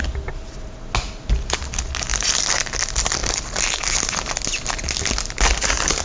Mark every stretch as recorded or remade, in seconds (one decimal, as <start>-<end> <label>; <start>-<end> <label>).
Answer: 0.0-6.0 recorded